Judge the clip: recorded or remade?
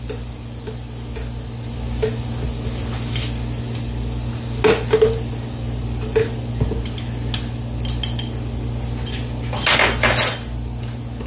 recorded